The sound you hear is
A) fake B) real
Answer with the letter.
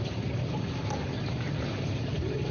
B